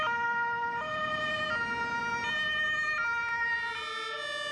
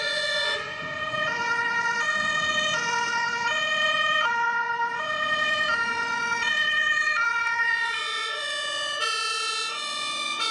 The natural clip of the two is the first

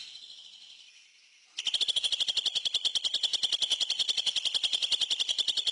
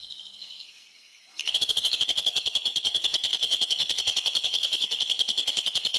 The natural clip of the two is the first